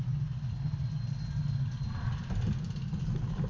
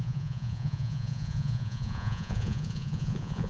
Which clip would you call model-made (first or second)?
second